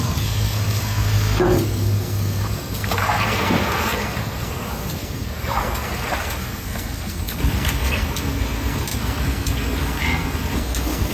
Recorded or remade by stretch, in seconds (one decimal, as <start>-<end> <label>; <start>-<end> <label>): 0.0-11.1 remade